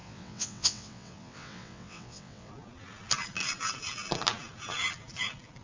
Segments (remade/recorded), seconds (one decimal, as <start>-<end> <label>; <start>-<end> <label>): 0.0-2.5 remade; 2.5-5.6 recorded